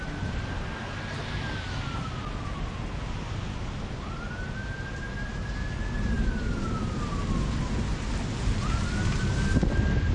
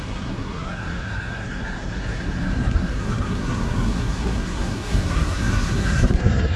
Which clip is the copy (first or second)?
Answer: second